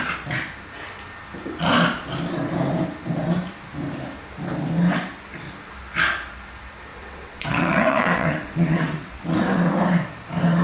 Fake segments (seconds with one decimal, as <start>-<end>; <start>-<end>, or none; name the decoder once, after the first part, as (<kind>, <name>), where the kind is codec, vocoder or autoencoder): 6.9-9.7 (vocoder, WaveNeXt)